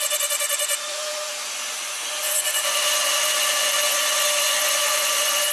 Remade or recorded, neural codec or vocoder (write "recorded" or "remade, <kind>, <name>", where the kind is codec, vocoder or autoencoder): remade, vocoder, Vocos